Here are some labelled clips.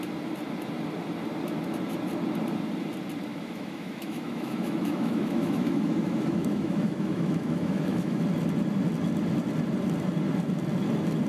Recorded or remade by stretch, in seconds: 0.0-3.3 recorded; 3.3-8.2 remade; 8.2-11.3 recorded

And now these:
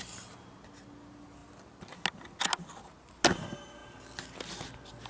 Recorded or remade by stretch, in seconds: 0.0-5.1 recorded

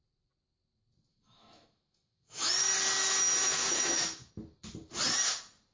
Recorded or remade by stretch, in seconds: 0.0-1.1 recorded; 1.1-2.5 remade; 2.5-3.4 recorded; 3.4-4.3 remade; 4.3-5.7 recorded

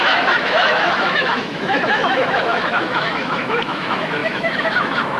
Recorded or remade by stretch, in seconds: 0.0-5.2 remade

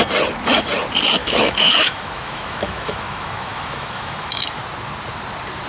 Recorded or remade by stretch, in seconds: 0.0-1.2 recorded; 1.2-4.6 remade; 4.6-5.7 recorded